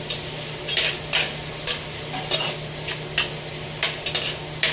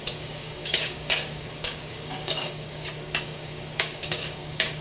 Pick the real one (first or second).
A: first